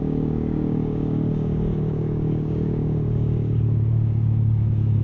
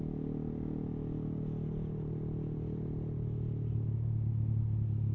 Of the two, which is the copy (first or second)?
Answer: first